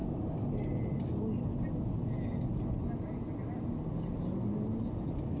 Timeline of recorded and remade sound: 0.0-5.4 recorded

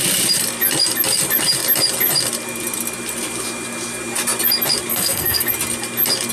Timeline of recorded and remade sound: 0.0-4.9 recorded; 4.9-5.5 remade; 5.5-6.3 recorded

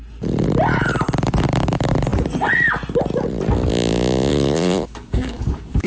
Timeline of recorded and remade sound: 0.0-4.3 recorded; 4.3-5.9 remade

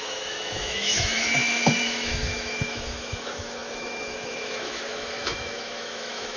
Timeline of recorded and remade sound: 0.0-6.4 remade

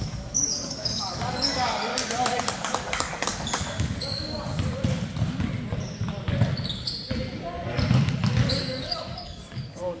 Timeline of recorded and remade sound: 0.0-1.9 remade; 1.9-2.4 recorded; 2.4-4.5 remade; 4.5-8.5 recorded; 8.5-10.0 remade

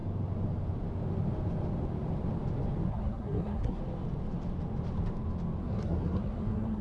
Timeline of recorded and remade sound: 0.0-2.9 recorded; 2.9-3.8 remade; 3.8-5.6 recorded; 5.6-6.8 remade